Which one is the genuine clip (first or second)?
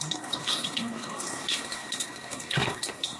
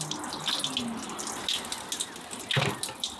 second